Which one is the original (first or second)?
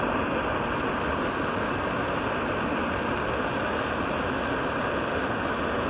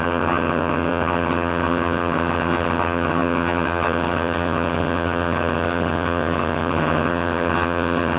first